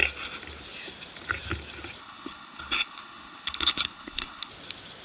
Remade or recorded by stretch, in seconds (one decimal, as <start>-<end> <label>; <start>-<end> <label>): 0.0-2.0 recorded; 2.0-4.5 remade; 4.5-5.0 recorded